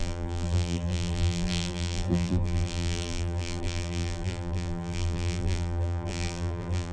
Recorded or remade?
remade